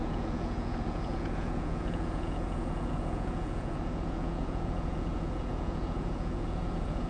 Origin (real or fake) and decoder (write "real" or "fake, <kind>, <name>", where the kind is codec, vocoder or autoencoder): fake, vocoder, Vocos